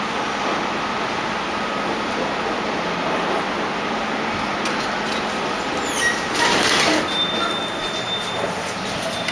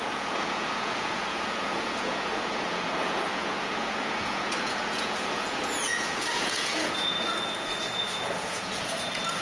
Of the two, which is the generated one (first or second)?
second